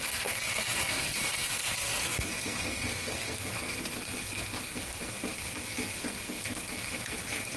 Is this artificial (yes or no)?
yes